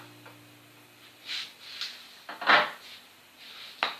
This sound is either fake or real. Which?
real